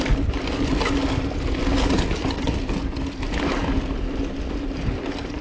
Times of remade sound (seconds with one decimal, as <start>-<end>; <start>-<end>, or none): none